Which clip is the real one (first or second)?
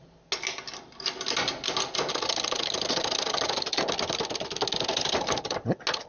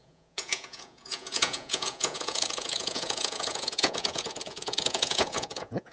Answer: first